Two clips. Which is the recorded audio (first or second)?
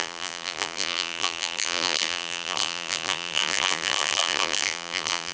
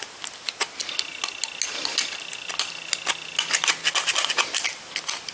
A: second